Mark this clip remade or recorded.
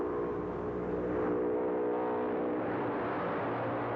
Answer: recorded